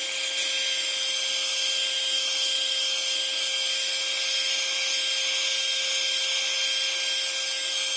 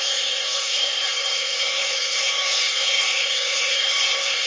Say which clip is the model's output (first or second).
second